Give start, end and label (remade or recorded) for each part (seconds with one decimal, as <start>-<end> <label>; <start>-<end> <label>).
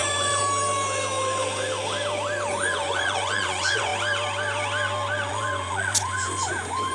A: 0.0-0.4 remade; 0.4-2.5 recorded; 2.5-3.9 remade; 3.9-5.3 recorded; 5.3-6.9 remade